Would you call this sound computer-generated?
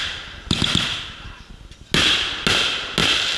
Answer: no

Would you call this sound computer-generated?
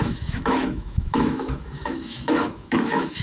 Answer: yes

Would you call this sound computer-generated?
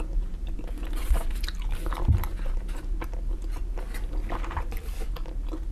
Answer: no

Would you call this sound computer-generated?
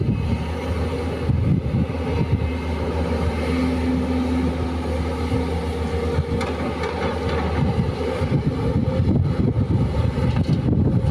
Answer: no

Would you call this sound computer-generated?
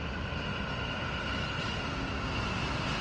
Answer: no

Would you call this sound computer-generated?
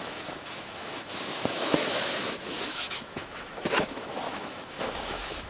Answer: yes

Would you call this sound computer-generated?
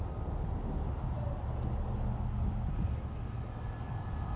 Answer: no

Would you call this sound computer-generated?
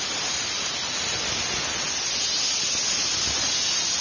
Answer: no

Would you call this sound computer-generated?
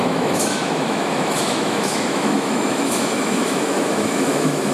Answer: yes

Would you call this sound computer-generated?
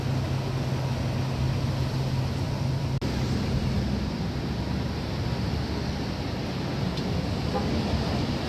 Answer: no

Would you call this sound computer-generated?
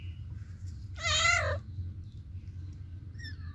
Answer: no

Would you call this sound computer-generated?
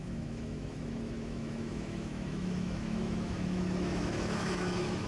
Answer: yes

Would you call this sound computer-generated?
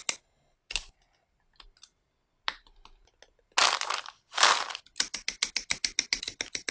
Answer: no